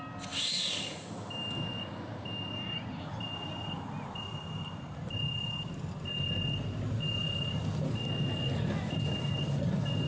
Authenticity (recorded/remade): recorded